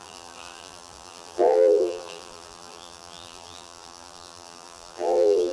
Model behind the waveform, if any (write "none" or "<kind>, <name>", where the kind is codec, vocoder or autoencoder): vocoder, BigVGAN v2